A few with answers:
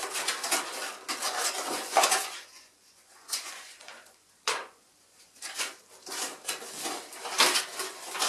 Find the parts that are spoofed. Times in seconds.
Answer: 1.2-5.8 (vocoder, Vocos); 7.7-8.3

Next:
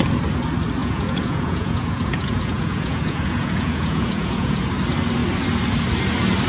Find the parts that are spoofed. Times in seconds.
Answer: 0.8-4.7 (vocoder, Vocos)

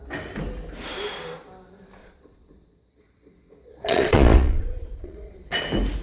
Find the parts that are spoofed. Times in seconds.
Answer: 2.0-5.6 (vocoder, Vocos)